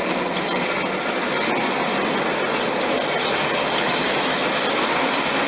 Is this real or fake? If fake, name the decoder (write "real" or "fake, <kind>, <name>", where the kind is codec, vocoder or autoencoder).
real